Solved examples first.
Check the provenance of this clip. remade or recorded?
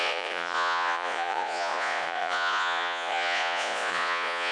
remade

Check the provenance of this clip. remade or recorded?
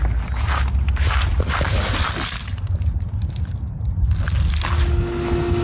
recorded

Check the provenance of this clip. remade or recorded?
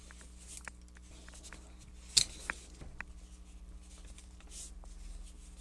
recorded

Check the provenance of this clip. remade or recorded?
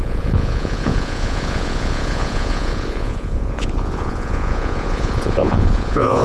remade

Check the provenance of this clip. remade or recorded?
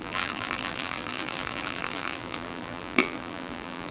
remade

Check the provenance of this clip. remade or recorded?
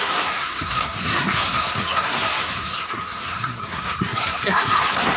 remade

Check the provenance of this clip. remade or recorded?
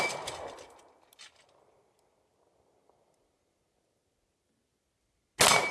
recorded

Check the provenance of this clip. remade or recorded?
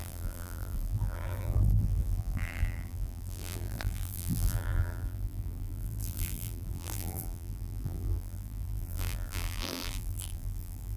remade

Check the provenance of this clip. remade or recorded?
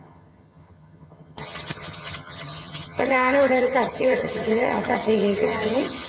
remade